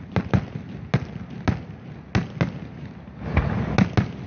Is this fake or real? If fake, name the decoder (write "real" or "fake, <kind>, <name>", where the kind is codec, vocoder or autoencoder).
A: real